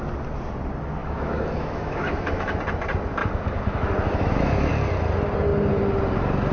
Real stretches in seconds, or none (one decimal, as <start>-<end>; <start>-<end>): 0.0-1.0; 2.6-3.2; 4.7-6.5